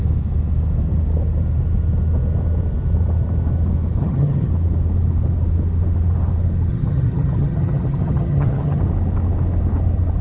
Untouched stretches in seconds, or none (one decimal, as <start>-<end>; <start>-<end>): 0.0-4.0; 4.5-6.7; 8.8-10.2

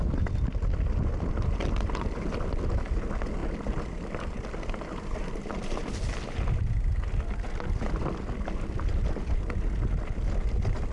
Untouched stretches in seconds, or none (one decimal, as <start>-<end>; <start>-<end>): 0.0-10.9

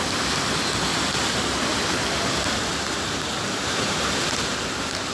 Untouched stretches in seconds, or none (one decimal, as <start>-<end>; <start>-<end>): 0.0-0.9; 4.0-5.1

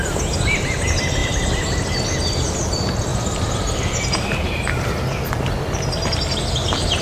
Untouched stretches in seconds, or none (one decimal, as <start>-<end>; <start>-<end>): 0.0-1.2; 1.8-3.1; 4.9-7.0

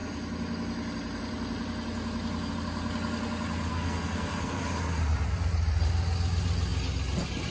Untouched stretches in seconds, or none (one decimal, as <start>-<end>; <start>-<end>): 0.0-3.7; 4.6-7.5

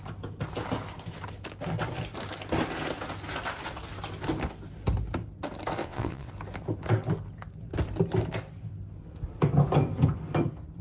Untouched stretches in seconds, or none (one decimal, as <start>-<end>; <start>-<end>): 0.0-5.8; 6.3-10.8

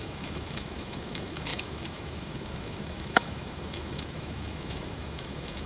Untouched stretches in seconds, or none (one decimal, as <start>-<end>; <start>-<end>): none